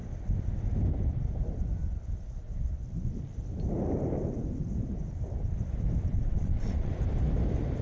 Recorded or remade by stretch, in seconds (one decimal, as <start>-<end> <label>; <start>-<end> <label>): 0.0-6.1 recorded; 6.1-6.9 remade; 6.9-7.8 recorded